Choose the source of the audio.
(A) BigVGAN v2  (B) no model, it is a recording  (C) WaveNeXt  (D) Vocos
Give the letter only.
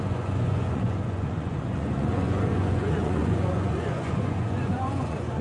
D